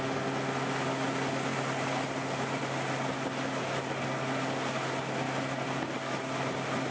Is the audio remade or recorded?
recorded